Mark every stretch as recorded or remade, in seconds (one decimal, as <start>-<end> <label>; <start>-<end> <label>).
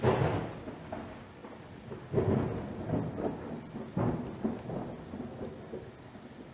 0.0-6.5 recorded